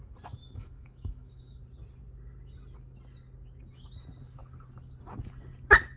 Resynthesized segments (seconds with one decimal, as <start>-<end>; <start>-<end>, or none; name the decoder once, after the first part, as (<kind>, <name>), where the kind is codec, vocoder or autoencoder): 0.4-1.6 (autoencoder, DAC-VAE)